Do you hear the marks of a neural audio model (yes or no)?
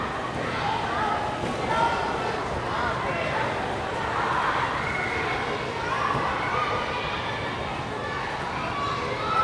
no